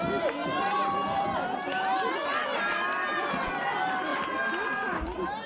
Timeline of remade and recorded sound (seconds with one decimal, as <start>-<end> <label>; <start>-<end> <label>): 0.0-0.4 recorded; 0.4-1.2 remade; 1.2-4.1 recorded; 4.1-5.5 remade